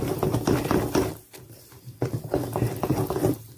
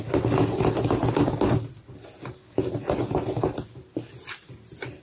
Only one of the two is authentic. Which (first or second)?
second